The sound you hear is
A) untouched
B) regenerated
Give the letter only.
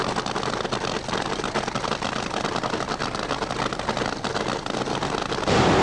A